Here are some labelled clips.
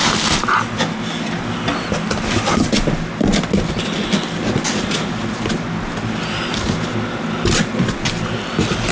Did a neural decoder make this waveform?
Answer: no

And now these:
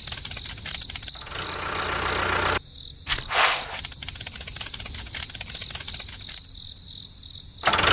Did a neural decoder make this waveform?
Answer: no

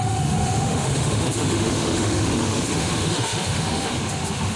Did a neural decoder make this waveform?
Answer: yes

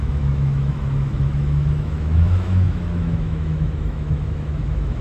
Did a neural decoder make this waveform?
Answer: yes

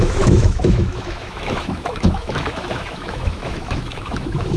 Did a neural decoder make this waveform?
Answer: yes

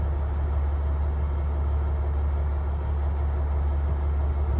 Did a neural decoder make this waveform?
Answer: no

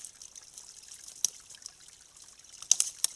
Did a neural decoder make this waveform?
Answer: no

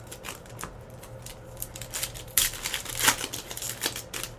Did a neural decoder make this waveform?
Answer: no